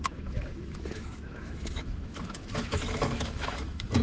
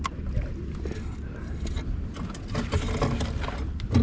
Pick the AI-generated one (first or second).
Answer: first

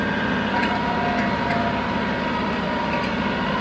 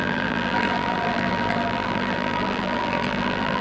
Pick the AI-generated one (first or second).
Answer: second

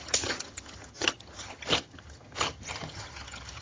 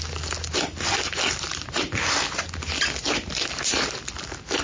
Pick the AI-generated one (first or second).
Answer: first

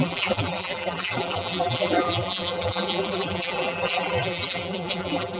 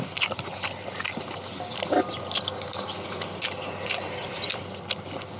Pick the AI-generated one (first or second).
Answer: first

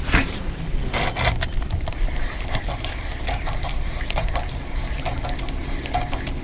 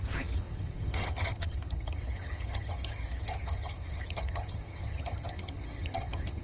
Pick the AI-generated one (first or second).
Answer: second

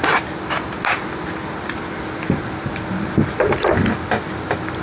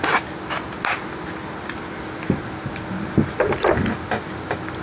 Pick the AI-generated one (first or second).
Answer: first